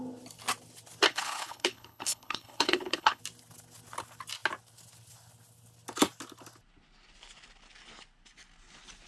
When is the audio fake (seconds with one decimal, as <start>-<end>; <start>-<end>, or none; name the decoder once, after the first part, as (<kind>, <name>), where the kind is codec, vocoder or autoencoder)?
1.1-3.2 (codec, HILCodec)